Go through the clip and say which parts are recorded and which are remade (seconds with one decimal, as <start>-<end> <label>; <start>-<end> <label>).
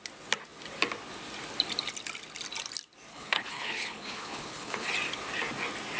0.0-3.1 recorded; 3.1-4.9 remade; 4.9-6.0 recorded